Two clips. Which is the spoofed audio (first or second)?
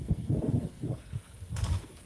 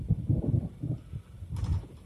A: first